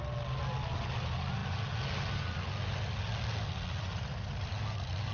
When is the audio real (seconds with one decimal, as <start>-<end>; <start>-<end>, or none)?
0.0-5.1

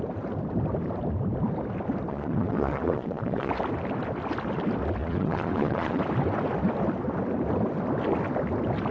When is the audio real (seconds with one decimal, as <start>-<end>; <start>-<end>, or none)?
0.0-2.1; 3.5-5.0; 6.0-8.9

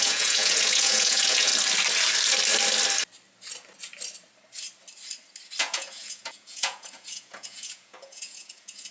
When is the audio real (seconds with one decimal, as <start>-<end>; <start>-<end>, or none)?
1.5-5.6

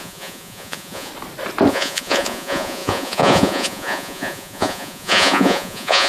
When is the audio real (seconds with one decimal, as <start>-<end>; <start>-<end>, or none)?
1.1-1.7

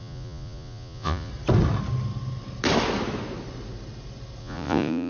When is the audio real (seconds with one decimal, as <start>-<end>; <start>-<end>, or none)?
1.3-4.4

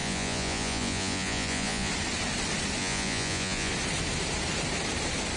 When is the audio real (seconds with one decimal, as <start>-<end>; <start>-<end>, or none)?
1.9-2.8; 3.7-5.4

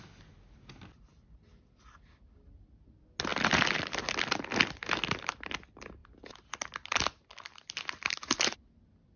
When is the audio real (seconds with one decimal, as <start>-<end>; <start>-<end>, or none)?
0.0-9.2